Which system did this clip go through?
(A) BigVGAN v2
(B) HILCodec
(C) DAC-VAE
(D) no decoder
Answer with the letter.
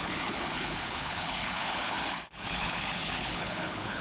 B